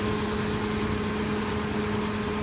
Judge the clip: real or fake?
real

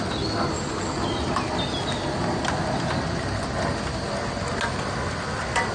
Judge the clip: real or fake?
real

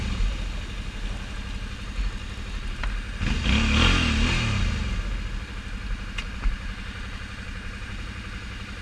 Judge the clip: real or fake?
real